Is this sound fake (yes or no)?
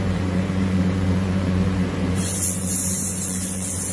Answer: yes